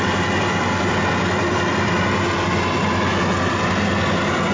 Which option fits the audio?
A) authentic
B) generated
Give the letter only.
A